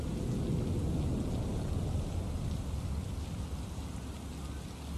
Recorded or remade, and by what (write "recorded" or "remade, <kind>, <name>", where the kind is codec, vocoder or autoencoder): recorded